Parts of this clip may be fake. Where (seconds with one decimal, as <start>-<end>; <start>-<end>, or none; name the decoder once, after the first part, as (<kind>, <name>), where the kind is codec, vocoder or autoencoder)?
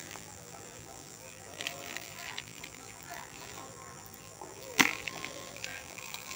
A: 0.0-6.4 (vocoder, BigVGAN v2)